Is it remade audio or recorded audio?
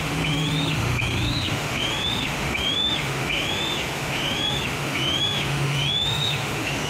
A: remade